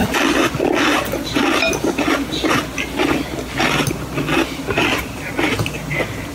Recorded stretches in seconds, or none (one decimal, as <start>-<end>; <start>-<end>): none